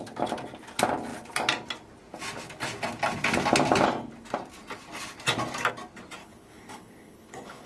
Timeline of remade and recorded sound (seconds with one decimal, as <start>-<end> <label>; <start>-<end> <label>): 0.0-6.2 recorded; 6.2-7.7 remade